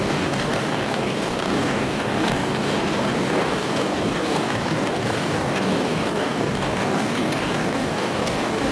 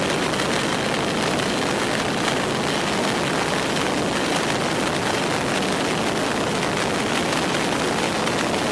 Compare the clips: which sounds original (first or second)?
second